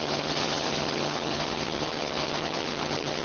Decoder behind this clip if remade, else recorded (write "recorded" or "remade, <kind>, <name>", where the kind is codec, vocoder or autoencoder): remade, vocoder, HiFi-GAN